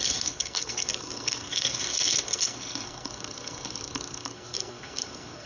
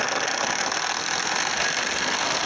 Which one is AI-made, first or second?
first